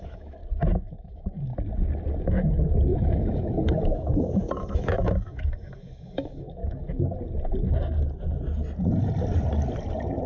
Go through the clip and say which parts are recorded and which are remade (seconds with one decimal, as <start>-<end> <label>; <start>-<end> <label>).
0.0-0.4 remade; 0.4-0.9 recorded; 0.9-1.5 remade; 1.5-2.2 recorded; 2.2-6.6 remade; 6.6-10.3 recorded